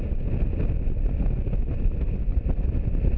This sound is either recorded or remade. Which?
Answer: recorded